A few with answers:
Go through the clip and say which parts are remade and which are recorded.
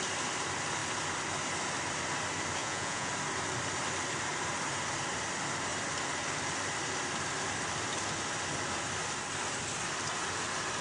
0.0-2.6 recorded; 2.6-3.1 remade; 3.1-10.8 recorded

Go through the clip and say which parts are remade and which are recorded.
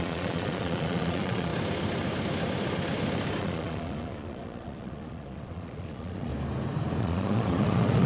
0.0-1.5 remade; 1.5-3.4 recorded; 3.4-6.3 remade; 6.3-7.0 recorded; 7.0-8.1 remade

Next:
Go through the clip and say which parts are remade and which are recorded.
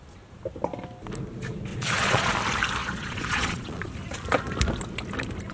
0.0-1.7 recorded; 1.7-2.3 remade; 2.3-2.8 recorded; 2.8-3.9 remade; 3.9-5.5 recorded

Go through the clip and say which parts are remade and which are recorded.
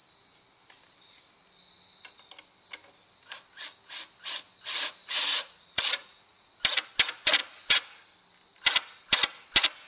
0.0-5.0 recorded; 5.0-6.5 remade; 6.5-9.9 recorded